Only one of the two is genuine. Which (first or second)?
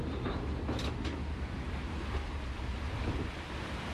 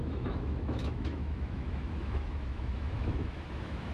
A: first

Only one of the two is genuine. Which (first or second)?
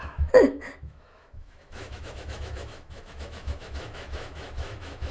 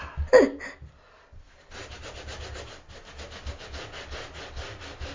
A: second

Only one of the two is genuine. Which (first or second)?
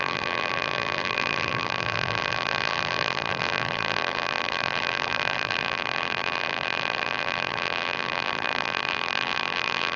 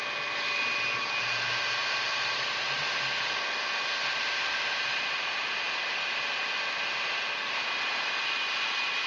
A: second